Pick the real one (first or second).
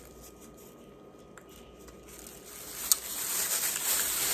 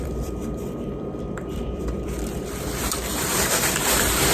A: first